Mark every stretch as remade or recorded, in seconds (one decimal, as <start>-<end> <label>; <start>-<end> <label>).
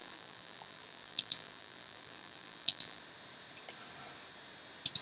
0.0-3.0 remade; 3.0-5.0 recorded